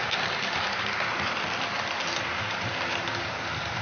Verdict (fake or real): fake